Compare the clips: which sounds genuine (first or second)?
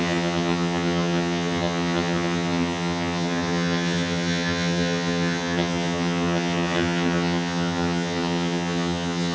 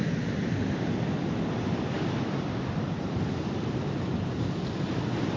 second